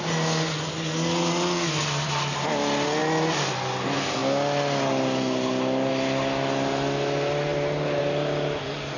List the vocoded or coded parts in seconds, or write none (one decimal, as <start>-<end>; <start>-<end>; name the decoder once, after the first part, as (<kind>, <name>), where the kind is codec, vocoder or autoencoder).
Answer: none

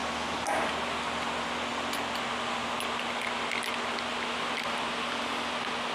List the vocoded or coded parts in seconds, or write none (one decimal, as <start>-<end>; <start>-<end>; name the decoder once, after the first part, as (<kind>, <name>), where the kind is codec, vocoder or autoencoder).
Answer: none